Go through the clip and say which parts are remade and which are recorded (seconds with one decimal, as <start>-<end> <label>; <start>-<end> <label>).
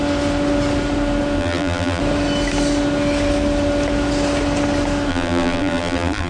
0.0-1.4 recorded; 1.4-2.0 remade; 2.0-5.1 recorded; 5.1-6.3 remade